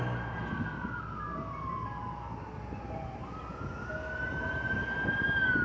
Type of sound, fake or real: real